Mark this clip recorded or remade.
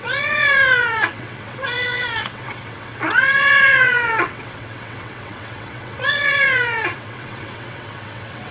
remade